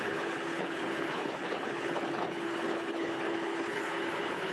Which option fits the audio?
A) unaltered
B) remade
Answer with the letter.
B